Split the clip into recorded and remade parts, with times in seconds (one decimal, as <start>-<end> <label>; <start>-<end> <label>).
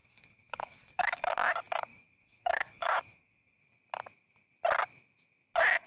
0.0-1.3 remade; 1.3-1.9 recorded; 1.9-3.6 remade; 3.6-5.9 recorded